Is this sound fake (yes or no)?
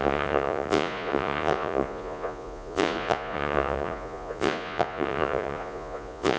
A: yes